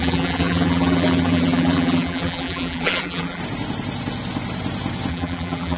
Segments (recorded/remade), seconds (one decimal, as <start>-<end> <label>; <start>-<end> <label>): 0.0-3.4 remade; 3.4-5.1 recorded; 5.1-5.8 remade

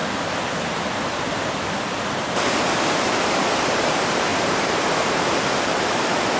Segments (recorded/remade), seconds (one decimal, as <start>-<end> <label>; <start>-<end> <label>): 0.0-4.3 recorded; 4.3-6.4 remade

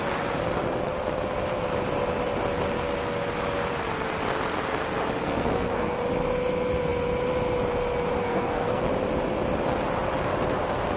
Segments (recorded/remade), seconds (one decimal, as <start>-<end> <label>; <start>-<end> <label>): 0.0-5.2 recorded; 5.2-5.9 remade; 5.9-8.2 recorded; 8.2-8.9 remade; 8.9-11.0 recorded

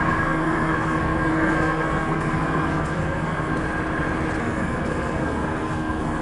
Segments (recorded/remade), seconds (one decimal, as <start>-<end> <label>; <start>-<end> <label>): 0.0-3.5 remade; 3.5-4.4 recorded; 4.4-6.2 remade

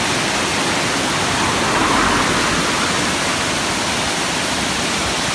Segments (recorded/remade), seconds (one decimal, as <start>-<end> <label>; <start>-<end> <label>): 0.0-5.3 recorded

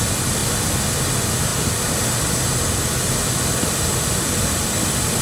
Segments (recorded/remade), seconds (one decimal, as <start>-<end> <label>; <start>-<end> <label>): 0.0-5.2 recorded

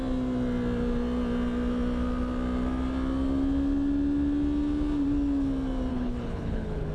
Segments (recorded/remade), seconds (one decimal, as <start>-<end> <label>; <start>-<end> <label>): 0.0-5.9 recorded; 5.9-6.9 remade

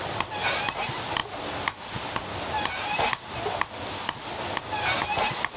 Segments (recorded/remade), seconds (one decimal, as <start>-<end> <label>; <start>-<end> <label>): 0.0-5.6 recorded